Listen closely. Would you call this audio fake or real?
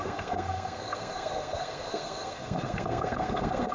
fake